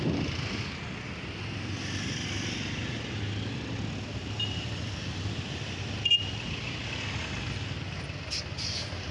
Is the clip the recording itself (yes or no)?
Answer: yes